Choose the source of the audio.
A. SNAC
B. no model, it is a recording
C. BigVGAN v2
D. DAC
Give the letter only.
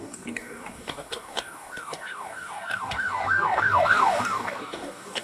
D